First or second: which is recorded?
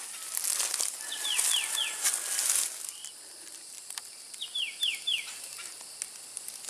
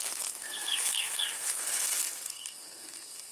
first